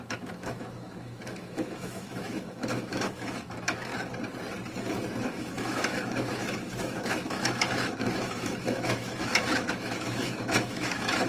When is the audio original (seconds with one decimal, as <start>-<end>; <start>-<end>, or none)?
3.9-5.2